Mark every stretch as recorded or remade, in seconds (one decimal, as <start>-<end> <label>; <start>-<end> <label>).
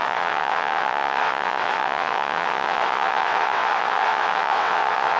0.0-5.2 remade